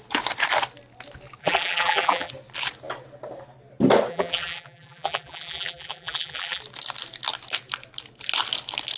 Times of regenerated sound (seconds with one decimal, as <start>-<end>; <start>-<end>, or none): 1.4-2.3; 4.1-6.6